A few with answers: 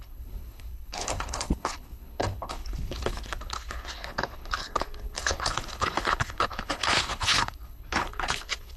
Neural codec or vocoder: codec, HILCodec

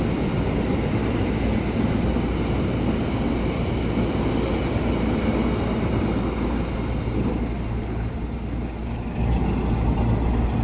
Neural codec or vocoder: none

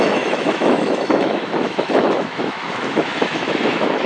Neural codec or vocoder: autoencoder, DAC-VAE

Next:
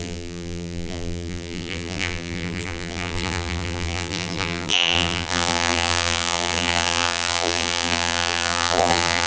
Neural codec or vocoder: vocoder, BigVGAN v2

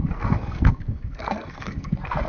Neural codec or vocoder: codec, SNAC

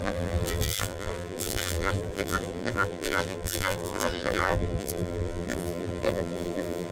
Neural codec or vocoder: vocoder, BigVGAN v2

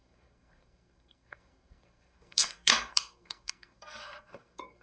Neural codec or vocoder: codec, SNAC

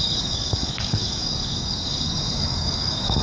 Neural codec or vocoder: codec, DAC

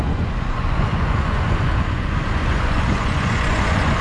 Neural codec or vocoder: vocoder, Vocos